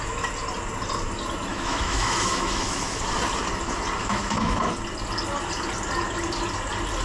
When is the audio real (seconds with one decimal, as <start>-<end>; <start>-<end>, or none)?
0.0-1.5; 3.0-4.0; 4.7-7.0